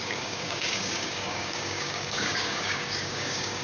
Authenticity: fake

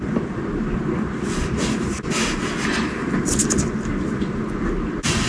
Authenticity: real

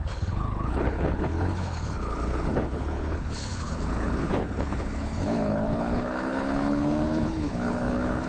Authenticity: fake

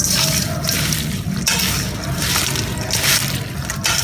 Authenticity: real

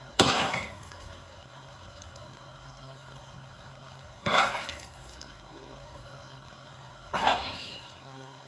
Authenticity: fake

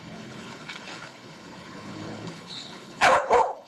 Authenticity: fake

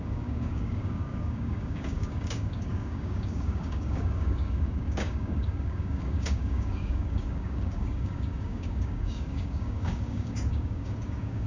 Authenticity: fake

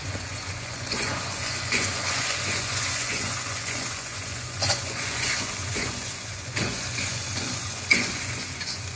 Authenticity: fake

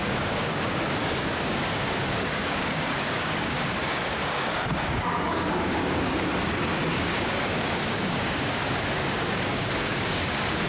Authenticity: fake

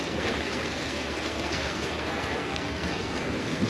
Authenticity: fake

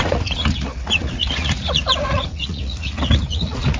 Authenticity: fake